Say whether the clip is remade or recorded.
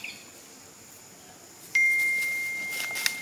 recorded